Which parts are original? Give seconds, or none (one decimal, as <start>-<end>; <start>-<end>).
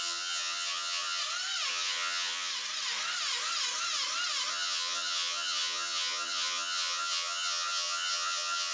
1.2-1.7; 2.5-4.5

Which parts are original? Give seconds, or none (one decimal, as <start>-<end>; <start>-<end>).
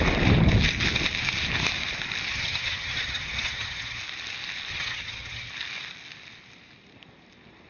0.0-2.3; 4.0-4.7; 5.5-7.7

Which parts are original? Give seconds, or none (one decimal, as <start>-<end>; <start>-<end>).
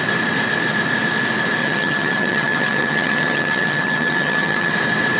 0.0-1.6; 4.7-5.2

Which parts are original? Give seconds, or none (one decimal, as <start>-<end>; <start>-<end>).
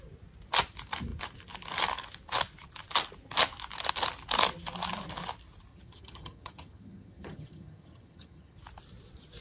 0.0-5.7; 8.6-9.4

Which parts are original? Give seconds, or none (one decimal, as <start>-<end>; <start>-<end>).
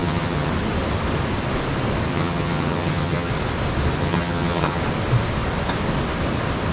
0.5-2.1; 3.3-4.0; 4.8-6.7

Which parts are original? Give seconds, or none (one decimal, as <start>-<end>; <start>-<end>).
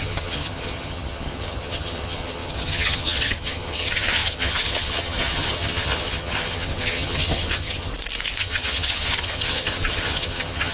7.9-8.4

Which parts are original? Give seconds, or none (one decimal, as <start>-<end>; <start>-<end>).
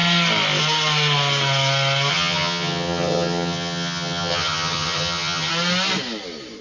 0.0-2.1; 5.5-6.6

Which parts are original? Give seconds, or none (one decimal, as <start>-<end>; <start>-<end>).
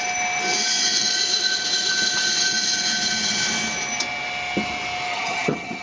0.0-5.1